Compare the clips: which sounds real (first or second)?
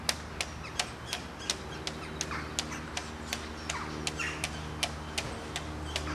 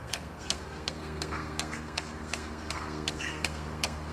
first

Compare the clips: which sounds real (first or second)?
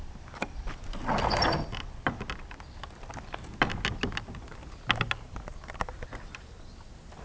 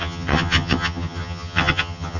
first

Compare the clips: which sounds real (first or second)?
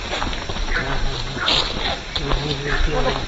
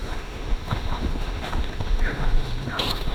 first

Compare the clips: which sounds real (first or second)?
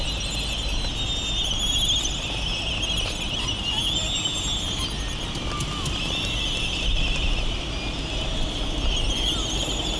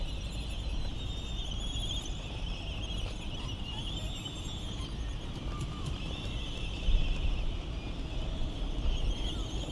first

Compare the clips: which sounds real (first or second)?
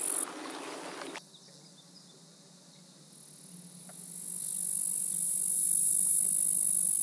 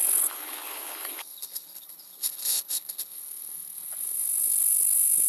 first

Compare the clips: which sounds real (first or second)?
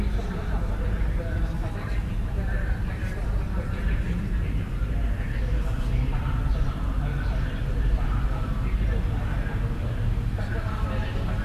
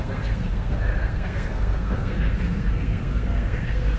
first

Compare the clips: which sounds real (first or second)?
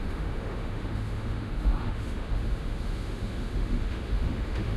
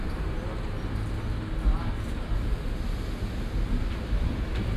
second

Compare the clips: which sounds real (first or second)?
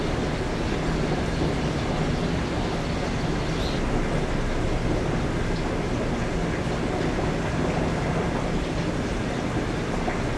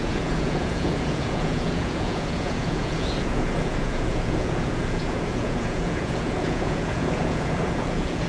first